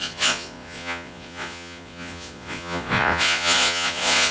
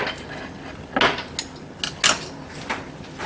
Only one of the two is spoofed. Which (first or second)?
first